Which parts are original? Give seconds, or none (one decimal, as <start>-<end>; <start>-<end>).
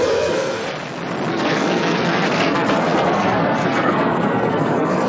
0.6-1.3